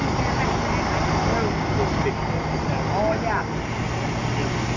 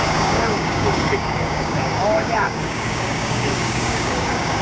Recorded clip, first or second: first